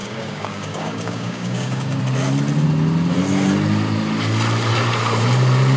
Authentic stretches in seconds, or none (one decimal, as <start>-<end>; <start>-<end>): 2.0-5.8